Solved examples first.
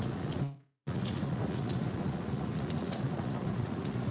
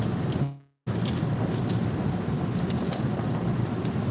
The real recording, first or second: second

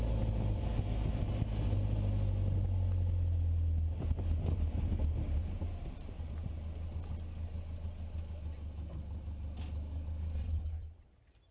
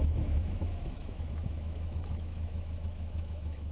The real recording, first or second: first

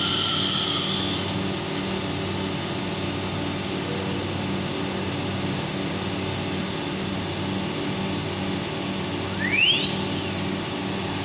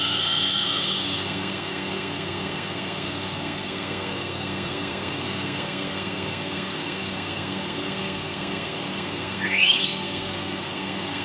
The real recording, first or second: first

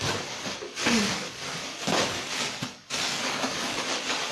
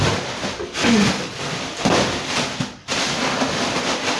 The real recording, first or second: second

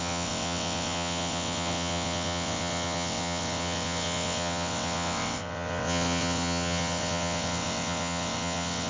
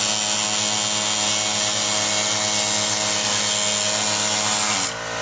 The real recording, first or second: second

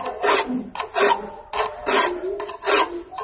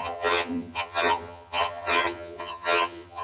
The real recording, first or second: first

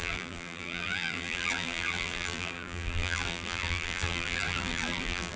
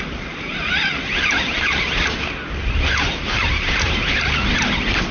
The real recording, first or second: second